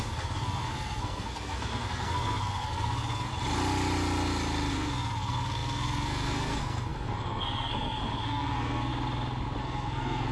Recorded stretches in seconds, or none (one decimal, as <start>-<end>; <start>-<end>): 3.3-4.7; 8.9-9.6